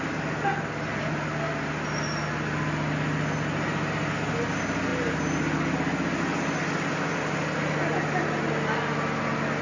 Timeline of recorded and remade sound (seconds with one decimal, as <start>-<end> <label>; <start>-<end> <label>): 0.0-9.6 recorded